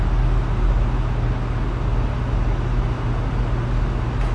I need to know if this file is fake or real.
real